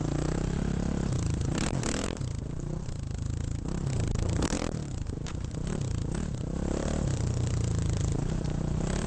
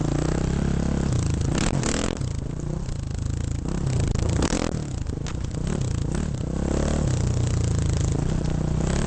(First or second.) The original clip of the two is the second